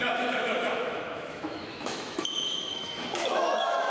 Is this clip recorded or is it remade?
remade